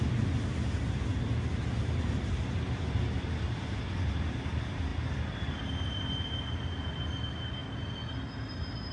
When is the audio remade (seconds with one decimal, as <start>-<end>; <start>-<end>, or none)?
none